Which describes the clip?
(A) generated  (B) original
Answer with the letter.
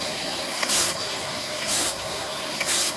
A